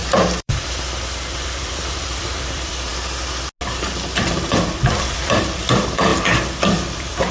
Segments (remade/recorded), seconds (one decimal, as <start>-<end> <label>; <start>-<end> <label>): 0.0-2.9 remade; 2.9-4.2 recorded; 4.2-6.1 remade; 6.1-6.6 recorded; 6.6-7.3 remade